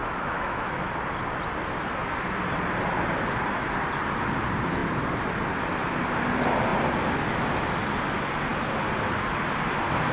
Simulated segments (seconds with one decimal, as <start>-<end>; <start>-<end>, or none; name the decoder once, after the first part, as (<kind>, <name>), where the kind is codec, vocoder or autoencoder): 0.0-0.9 (autoencoder, DAC-VAE)